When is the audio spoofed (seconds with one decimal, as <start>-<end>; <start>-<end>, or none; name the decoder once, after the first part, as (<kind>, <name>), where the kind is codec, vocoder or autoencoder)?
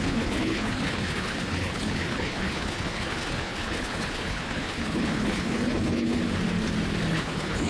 0.0-6.2 (codec, HILCodec); 7.1-7.7